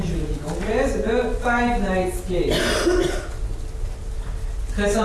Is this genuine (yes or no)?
yes